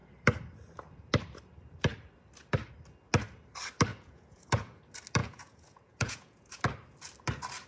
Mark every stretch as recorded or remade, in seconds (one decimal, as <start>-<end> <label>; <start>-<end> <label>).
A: 0.0-3.9 recorded; 3.9-4.8 remade; 4.8-5.2 recorded; 5.2-6.6 remade; 6.6-7.7 recorded